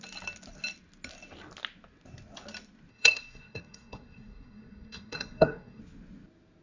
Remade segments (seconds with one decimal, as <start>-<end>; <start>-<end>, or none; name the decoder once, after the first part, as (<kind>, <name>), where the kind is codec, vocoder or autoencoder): 2.9-5.8 (codec, SNAC)